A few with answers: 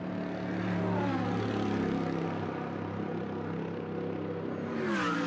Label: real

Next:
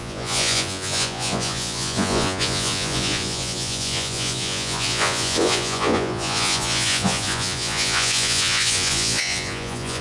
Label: fake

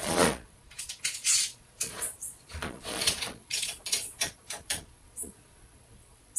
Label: fake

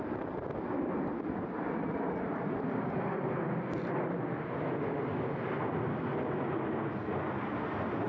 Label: real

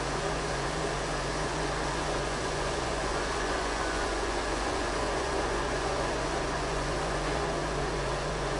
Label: fake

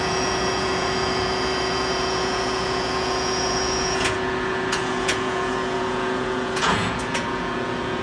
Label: fake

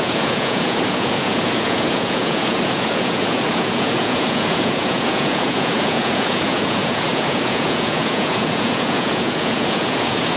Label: fake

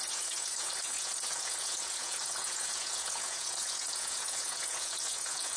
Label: fake